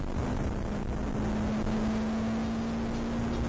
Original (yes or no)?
yes